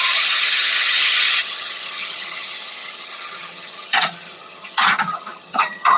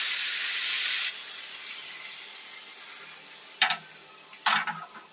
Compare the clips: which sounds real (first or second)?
second